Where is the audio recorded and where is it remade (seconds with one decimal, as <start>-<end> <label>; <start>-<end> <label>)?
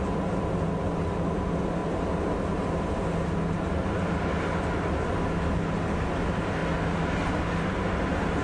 0.0-8.4 recorded